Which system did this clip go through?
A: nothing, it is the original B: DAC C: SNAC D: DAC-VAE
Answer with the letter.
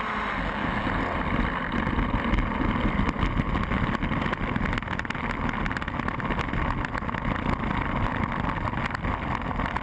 A